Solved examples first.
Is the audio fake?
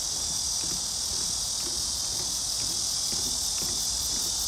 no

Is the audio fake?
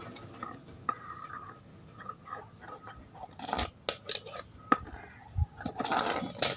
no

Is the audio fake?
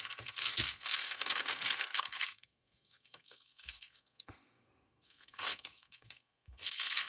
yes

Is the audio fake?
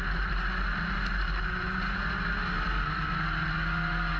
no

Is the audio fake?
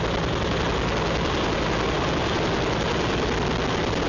no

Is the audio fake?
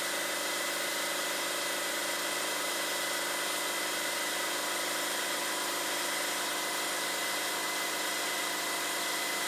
yes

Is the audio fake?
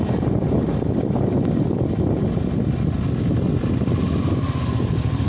no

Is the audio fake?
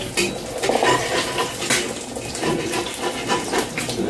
no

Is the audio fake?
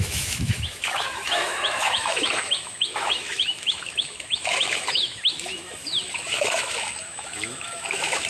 yes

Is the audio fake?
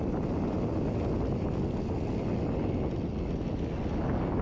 no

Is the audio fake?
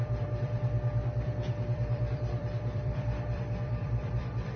yes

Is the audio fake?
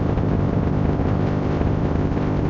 yes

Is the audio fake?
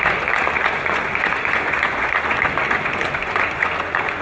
yes